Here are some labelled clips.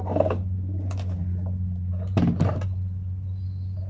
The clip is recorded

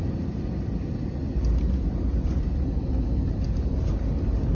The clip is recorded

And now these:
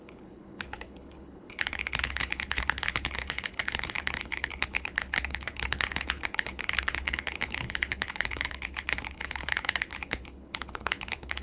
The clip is remade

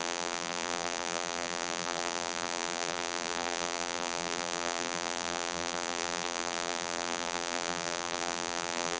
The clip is remade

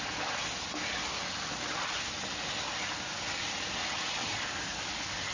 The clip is recorded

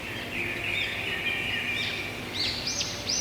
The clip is recorded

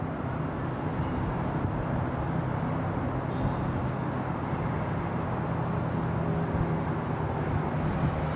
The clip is recorded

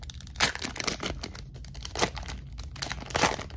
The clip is recorded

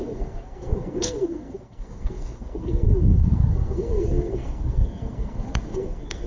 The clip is remade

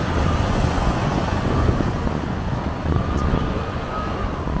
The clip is remade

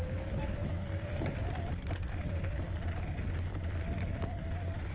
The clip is recorded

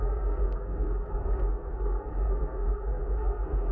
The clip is remade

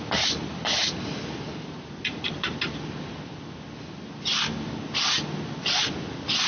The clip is recorded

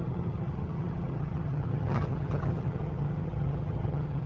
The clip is remade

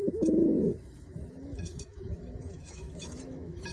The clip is remade